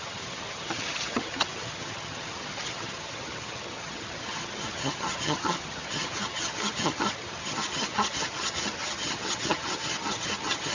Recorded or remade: remade